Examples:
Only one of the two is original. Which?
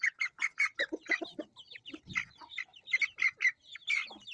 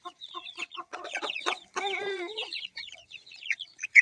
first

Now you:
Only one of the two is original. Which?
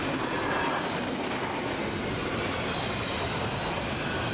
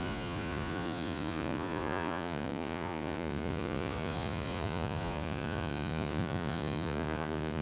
first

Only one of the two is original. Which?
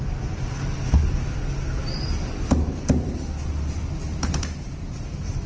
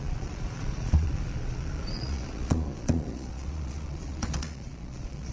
first